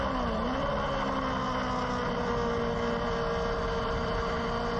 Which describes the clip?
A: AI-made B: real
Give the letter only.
B